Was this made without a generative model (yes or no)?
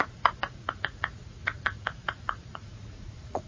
no